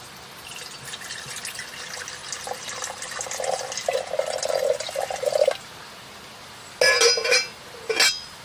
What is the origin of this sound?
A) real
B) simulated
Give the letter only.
A